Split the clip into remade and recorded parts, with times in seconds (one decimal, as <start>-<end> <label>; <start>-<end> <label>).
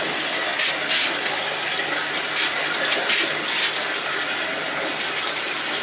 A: 0.0-5.8 recorded